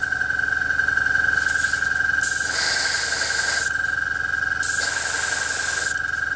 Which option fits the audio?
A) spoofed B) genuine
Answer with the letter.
B